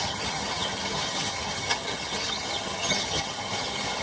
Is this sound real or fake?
fake